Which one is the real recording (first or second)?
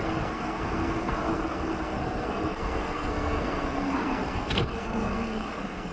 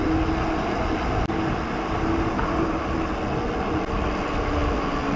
second